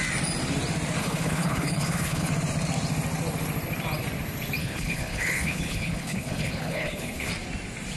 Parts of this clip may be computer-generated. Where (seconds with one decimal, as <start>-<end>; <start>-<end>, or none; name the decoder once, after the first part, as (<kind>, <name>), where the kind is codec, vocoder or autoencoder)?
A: 1.0-2.3 (codec, HILCodec); 4.6-7.3